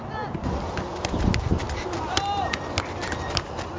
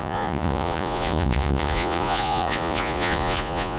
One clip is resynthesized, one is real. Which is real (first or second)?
first